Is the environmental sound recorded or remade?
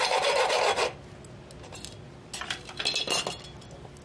recorded